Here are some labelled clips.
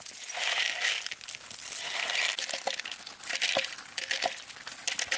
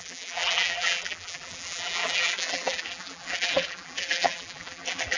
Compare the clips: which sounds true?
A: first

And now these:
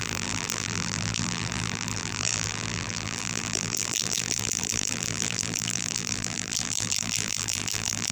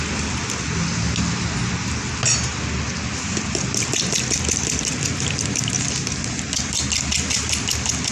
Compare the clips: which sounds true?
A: second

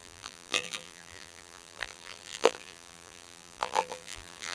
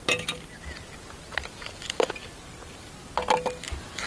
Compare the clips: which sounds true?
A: second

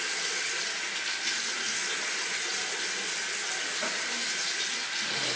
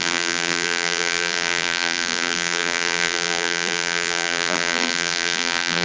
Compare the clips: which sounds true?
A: first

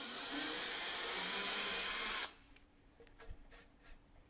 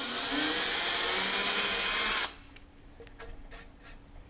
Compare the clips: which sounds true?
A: second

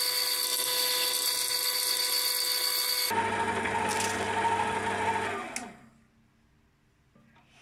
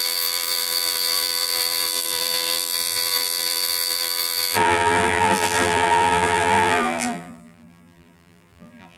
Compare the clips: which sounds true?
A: first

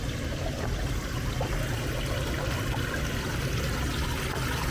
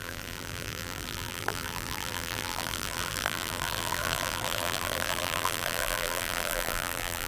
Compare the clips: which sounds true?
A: first